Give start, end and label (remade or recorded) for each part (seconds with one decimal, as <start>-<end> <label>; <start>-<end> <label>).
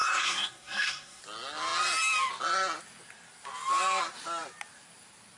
0.0-1.2 remade; 1.2-5.4 recorded